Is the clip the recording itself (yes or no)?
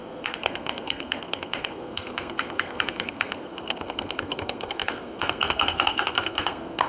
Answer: no